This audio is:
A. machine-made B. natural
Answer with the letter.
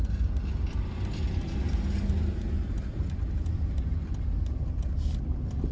B